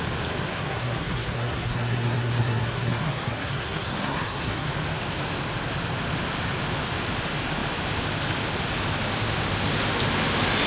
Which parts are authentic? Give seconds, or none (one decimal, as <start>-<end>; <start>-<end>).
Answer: 0.0-0.5; 4.7-10.7